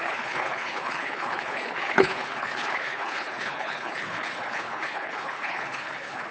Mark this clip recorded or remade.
remade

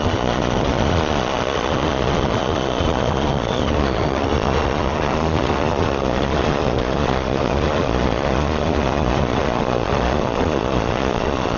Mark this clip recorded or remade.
remade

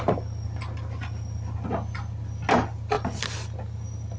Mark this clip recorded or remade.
recorded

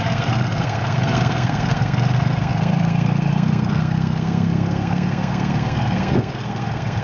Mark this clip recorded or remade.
remade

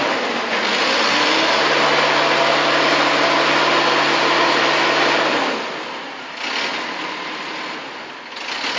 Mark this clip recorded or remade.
recorded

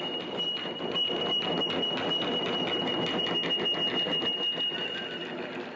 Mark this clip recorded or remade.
recorded